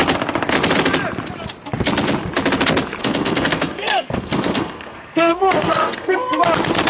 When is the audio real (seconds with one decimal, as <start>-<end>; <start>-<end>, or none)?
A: 0.0-3.0; 6.4-6.9